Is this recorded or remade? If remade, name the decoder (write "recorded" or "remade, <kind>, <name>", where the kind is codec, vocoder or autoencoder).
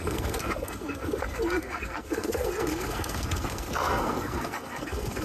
remade, codec, SNAC